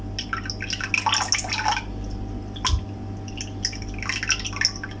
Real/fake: real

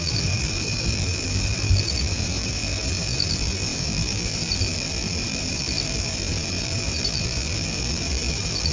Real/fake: fake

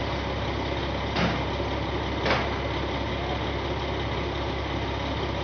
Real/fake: real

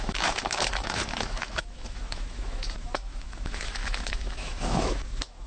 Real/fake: fake